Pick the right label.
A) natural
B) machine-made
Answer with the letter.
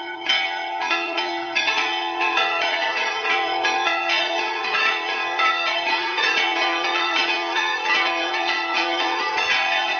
B